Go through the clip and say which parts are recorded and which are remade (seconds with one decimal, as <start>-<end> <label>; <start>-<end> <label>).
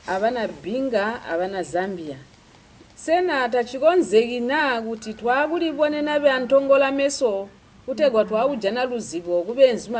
0.0-10.0 recorded